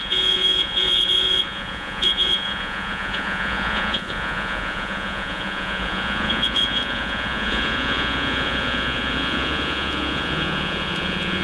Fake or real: fake